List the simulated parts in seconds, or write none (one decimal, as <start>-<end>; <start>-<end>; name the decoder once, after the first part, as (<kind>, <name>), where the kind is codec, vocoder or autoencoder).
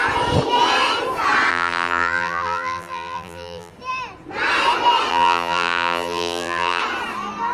1.5-3.7 (vocoder, BigVGAN v2); 5.1-6.8